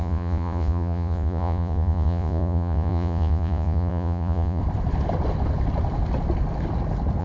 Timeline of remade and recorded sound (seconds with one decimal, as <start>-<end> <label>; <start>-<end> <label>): 0.0-4.6 remade; 4.6-7.2 recorded